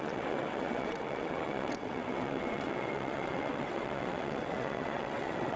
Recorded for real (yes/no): no